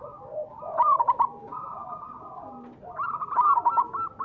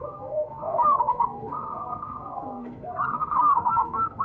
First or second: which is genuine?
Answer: first